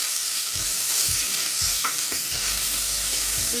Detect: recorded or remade remade